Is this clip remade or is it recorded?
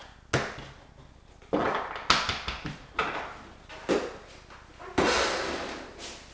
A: recorded